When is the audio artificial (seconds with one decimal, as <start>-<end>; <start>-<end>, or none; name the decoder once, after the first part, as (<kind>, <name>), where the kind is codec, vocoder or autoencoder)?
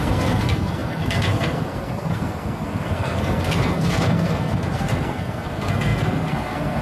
0.0-6.8 (codec, SNAC)